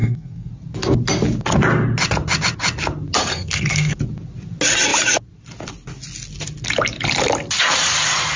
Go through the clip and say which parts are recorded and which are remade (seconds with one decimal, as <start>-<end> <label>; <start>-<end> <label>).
0.0-0.5 remade; 0.5-3.3 recorded; 3.3-4.0 remade; 4.0-8.4 recorded